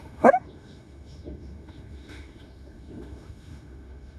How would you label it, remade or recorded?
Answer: remade